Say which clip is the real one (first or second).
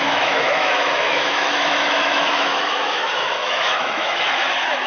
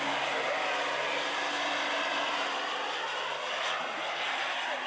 second